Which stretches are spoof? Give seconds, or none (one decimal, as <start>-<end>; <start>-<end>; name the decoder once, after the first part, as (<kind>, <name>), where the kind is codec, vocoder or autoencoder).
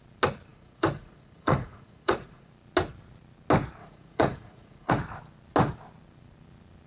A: 0.5-2.5 (vocoder, Vocos); 3.8-4.9